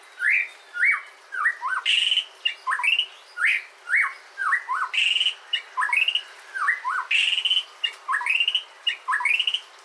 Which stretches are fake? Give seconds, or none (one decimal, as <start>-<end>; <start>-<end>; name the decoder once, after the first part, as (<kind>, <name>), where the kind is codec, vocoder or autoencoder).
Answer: none